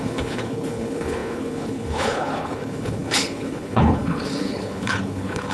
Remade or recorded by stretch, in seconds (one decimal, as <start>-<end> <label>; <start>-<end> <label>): 0.0-5.5 remade